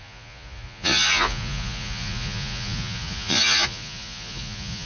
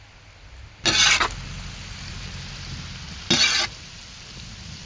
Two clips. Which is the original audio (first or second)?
second